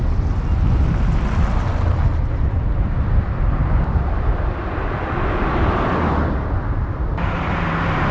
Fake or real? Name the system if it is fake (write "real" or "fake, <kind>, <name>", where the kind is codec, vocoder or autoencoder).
real